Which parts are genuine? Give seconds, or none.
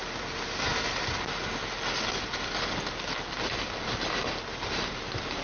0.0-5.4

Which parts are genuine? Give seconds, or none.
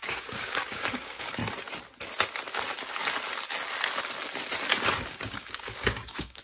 1.4-5.1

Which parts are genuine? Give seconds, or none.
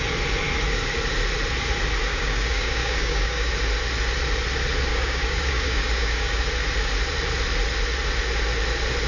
0.0-2.1; 3.5-4.9; 6.4-9.1